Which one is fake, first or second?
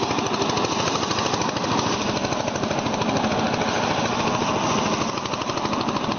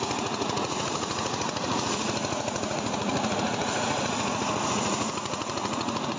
second